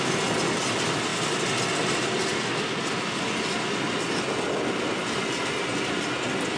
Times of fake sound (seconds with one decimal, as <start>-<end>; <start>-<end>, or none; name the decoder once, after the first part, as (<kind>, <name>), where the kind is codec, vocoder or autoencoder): none